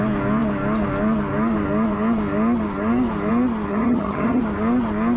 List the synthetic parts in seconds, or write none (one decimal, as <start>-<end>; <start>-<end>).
3.7-4.4